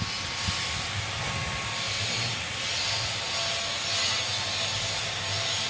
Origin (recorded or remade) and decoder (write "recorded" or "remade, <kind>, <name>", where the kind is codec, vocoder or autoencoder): recorded